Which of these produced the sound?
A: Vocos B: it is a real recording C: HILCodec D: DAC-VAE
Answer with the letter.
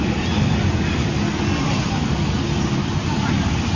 B